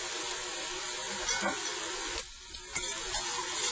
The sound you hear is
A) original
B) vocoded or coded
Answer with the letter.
A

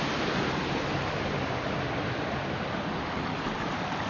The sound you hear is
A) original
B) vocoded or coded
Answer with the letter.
A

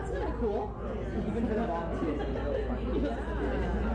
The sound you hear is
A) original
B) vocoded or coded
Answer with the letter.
A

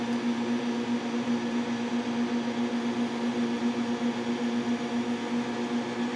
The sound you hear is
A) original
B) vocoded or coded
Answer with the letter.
A